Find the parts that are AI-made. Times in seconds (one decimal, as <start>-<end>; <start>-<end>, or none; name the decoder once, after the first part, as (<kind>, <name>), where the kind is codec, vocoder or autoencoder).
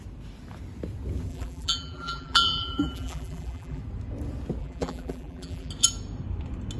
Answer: 1.3-3.8 (vocoder, BigVGAN v2); 4.6-5.7